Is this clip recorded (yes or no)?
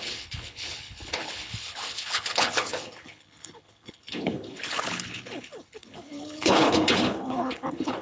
no